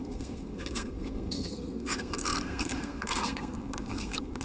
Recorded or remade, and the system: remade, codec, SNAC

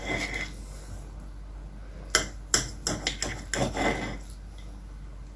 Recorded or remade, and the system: recorded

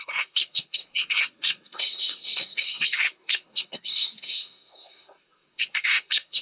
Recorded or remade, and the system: remade, codec, SNAC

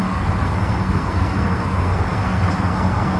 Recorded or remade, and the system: remade, codec, SNAC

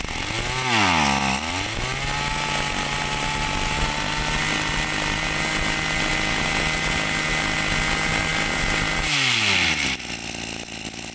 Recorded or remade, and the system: recorded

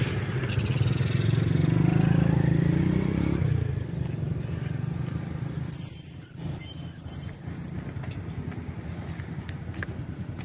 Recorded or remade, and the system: recorded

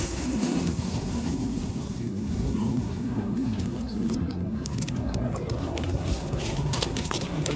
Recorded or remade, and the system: remade, codec, SNAC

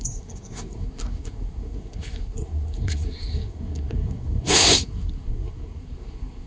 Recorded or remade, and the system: remade, codec, SNAC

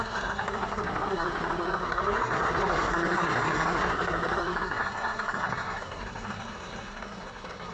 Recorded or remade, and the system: remade, codec, SNAC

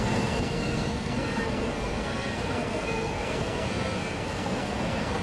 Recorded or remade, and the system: remade, codec, SNAC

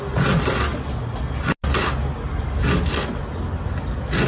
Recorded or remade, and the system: recorded